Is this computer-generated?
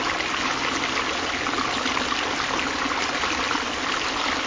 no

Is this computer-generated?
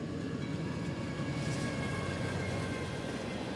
yes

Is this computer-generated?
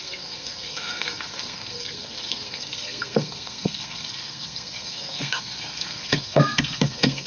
yes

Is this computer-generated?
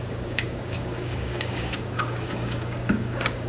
yes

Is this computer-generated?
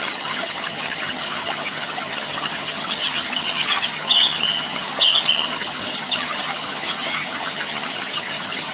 yes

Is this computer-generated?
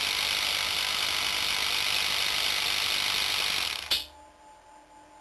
no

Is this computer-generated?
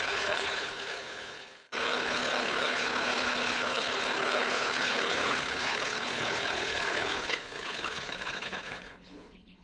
yes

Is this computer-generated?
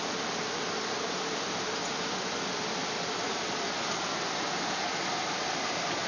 no